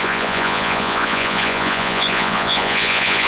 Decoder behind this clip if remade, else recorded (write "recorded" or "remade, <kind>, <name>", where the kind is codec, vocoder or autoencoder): remade, vocoder, Vocos